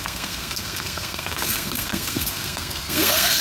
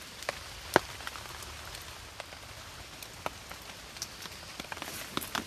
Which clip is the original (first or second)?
second